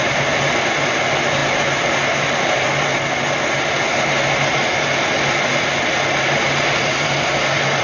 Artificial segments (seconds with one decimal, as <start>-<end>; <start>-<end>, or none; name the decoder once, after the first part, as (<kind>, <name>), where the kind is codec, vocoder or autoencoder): none